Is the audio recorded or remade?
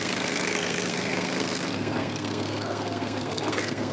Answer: remade